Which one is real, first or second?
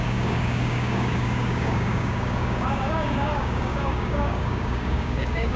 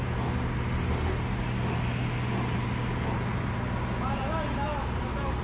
second